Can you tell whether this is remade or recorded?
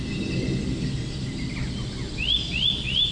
recorded